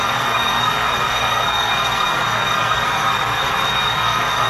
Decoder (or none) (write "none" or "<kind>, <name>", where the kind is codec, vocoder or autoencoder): codec, SNAC